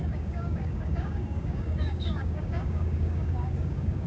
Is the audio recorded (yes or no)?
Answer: no